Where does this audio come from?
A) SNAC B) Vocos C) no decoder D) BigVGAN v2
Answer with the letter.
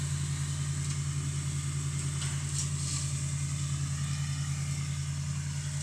C